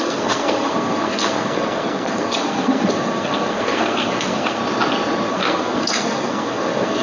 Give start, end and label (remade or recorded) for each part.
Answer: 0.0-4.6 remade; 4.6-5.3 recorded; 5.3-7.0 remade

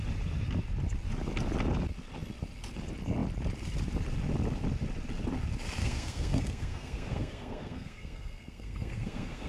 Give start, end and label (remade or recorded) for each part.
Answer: 0.0-5.8 recorded; 5.8-9.5 remade